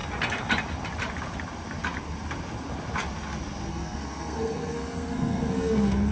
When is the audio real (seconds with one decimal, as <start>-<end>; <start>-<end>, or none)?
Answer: 0.0-3.7

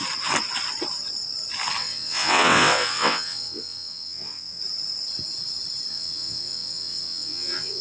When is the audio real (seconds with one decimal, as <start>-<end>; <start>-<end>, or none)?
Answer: 0.0-1.8; 4.6-5.9

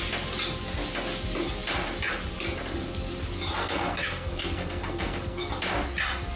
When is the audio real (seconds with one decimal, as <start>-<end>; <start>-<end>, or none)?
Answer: 0.0-3.6; 5.5-6.4

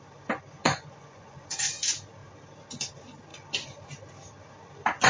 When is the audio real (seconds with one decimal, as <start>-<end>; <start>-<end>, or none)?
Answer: 0.0-0.6; 1.8-5.1

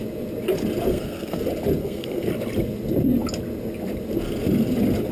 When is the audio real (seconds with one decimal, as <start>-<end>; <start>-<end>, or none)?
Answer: 0.0-0.9; 1.4-1.8; 2.3-5.1

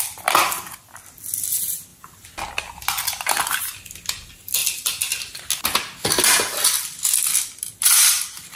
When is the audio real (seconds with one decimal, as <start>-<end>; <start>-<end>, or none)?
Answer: 0.0-8.6